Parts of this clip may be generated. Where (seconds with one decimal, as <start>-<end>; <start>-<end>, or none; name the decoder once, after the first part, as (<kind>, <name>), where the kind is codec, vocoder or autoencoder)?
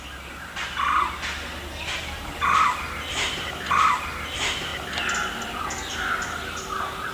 none